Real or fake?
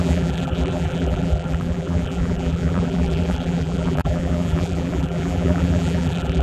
fake